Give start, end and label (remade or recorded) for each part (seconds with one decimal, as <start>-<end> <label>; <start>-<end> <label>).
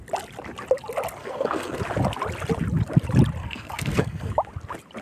0.0-1.2 recorded; 1.2-1.8 remade; 1.8-3.4 recorded; 3.4-4.3 remade; 4.3-5.0 recorded